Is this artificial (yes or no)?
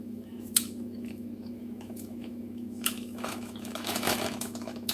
yes